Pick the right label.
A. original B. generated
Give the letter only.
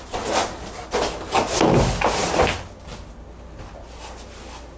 A